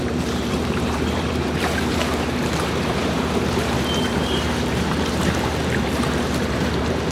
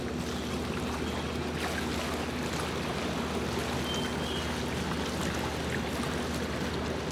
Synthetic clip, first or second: first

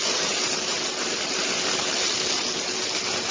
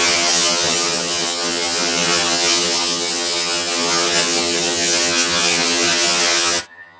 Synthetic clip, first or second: second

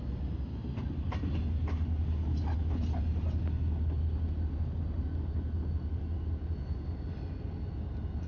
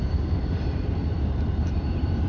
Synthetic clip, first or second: second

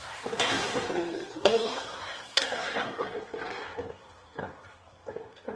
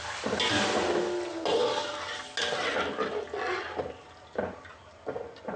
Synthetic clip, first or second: first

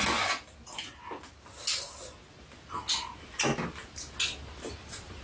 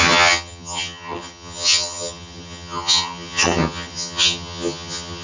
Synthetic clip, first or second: second